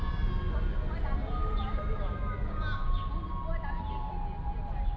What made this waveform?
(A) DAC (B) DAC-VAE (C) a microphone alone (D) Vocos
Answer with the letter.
C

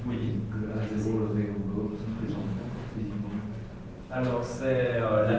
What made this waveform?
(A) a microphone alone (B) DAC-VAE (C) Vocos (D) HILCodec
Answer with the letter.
A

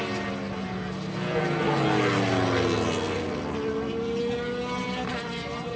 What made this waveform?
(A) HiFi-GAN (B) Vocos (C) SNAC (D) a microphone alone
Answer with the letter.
D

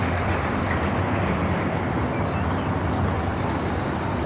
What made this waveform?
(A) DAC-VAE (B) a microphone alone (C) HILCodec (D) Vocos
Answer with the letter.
B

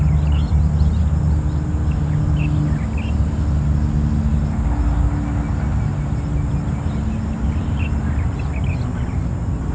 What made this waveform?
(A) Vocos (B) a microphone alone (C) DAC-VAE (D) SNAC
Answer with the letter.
B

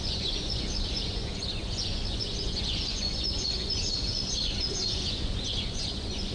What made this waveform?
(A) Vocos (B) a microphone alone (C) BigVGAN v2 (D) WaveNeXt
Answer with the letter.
A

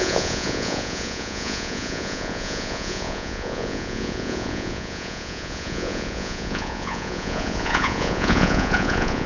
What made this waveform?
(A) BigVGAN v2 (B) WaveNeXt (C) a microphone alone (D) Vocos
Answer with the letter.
D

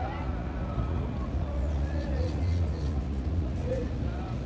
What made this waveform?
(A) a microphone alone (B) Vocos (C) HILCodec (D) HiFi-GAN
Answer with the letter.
B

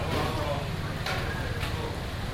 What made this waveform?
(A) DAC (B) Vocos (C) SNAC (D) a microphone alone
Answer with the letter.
D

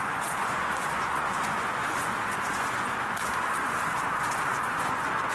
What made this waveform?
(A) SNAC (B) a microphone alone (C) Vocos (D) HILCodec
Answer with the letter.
C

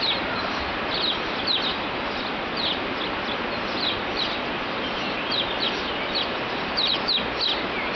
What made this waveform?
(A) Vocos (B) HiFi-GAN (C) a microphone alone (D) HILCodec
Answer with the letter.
C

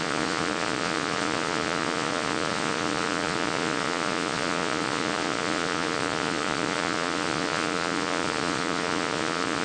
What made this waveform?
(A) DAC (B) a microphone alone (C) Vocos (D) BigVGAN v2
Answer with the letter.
C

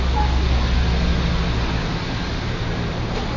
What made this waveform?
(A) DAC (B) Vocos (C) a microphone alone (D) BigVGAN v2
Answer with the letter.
C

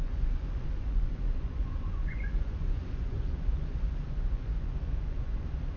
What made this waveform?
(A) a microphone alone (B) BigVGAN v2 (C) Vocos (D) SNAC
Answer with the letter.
C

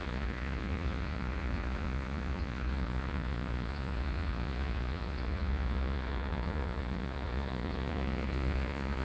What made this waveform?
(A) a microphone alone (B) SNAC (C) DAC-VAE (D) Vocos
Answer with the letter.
D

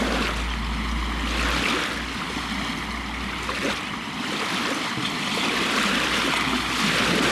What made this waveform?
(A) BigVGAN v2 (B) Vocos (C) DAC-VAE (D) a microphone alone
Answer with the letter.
D